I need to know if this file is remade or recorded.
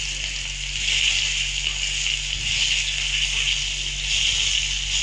recorded